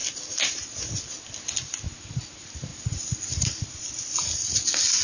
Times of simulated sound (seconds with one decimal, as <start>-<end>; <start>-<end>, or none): none